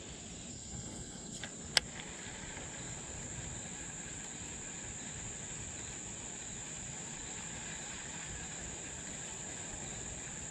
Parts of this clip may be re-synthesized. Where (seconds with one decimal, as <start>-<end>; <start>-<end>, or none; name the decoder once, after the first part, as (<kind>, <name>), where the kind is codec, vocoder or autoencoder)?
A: 0.5-1.4 (codec, SNAC)